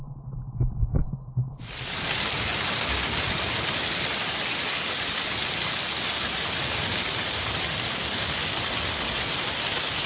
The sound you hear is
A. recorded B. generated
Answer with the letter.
A